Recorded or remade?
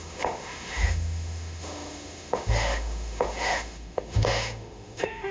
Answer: remade